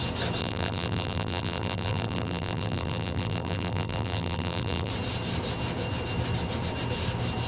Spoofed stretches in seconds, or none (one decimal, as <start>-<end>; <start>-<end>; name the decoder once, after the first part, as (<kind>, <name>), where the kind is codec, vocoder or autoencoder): 0.4-4.9 (vocoder, BigVGAN v2)